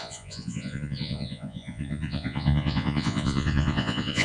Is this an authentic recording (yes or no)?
no